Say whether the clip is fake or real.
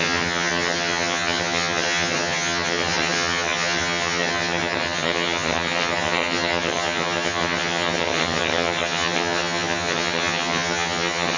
fake